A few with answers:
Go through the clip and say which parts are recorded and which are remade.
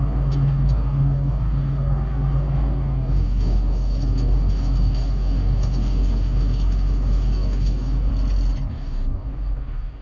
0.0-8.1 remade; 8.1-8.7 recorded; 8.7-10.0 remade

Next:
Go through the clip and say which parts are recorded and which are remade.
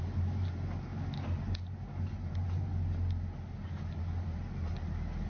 0.0-5.3 recorded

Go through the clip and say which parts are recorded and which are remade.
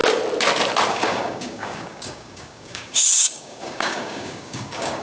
0.0-0.9 recorded; 0.9-5.0 remade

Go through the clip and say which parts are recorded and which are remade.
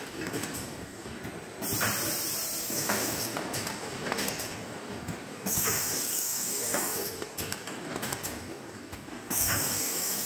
0.0-1.2 remade; 1.2-2.6 recorded; 2.6-10.3 remade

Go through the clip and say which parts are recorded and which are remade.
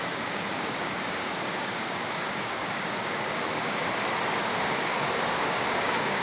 0.0-3.8 remade; 3.8-4.3 recorded; 4.3-6.2 remade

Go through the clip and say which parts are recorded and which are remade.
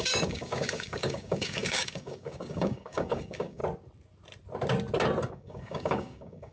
0.0-3.6 remade; 3.6-5.3 recorded; 5.3-6.5 remade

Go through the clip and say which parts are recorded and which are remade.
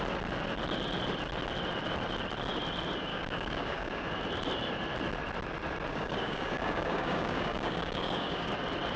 0.0-3.1 recorded; 3.1-4.0 remade; 4.0-5.9 recorded; 5.9-8.5 remade; 8.5-9.0 recorded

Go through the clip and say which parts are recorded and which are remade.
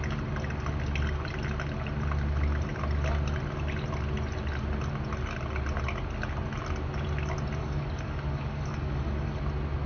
0.0-7.6 recorded; 7.6-9.4 remade; 9.4-9.9 recorded